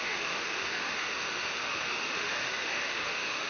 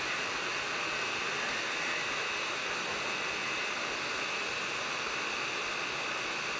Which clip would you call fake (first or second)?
first